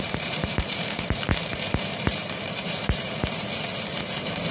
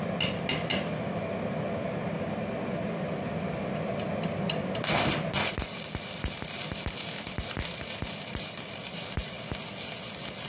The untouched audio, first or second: second